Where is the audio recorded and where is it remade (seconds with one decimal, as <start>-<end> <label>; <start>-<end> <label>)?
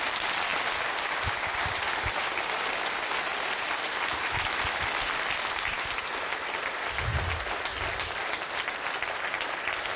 0.0-10.0 recorded